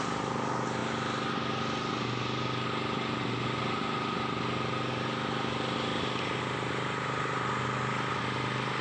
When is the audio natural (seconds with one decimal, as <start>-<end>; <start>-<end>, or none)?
0.0-8.8